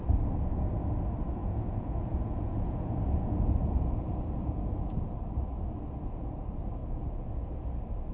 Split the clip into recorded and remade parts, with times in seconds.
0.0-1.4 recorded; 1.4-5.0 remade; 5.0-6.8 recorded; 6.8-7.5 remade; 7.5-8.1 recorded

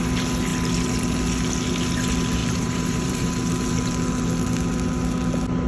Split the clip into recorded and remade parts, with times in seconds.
0.0-2.4 recorded; 2.4-3.3 remade; 3.3-5.7 recorded

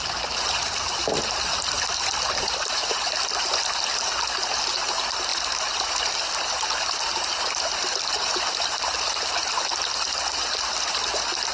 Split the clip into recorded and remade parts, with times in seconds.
0.0-11.5 recorded

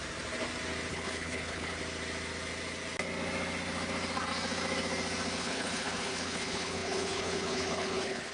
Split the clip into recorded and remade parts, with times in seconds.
0.0-0.9 recorded; 0.9-1.8 remade; 1.8-5.4 recorded; 5.4-8.3 remade

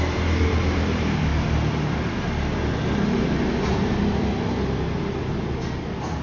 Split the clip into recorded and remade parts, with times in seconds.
0.0-6.2 recorded

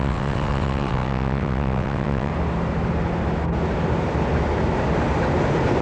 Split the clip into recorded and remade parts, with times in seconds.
0.0-2.3 remade; 2.3-5.8 recorded

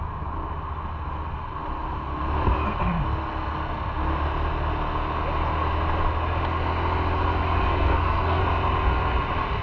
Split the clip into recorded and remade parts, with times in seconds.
0.0-7.7 recorded; 7.7-8.4 remade; 8.4-9.6 recorded

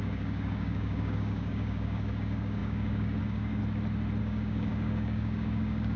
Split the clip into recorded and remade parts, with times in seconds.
0.0-3.6 remade; 3.6-4.2 recorded; 4.2-6.0 remade